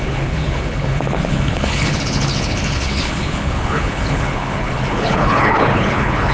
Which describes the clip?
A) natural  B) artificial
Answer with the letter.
B